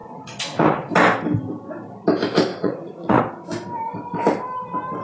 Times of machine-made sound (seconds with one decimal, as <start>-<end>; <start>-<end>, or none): 0.0-0.9; 2.5-3.2